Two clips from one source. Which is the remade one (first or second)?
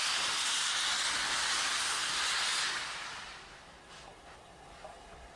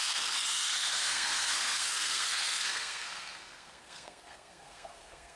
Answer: second